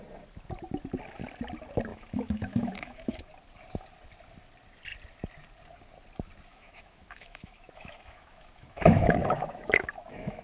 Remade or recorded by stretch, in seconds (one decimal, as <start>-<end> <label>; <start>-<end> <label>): 0.0-1.9 recorded; 1.9-3.2 remade; 3.2-6.5 recorded; 6.5-10.4 remade